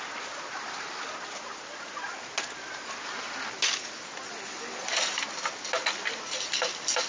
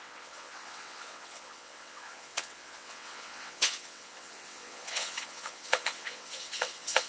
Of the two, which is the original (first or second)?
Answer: first